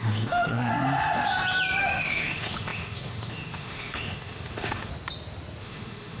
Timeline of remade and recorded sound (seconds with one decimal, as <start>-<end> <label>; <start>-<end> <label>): 0.0-0.7 remade; 0.7-1.8 recorded; 1.8-4.9 remade; 4.9-5.6 recorded; 5.6-6.2 remade